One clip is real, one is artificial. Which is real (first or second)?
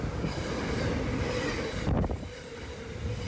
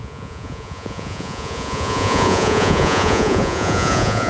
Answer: first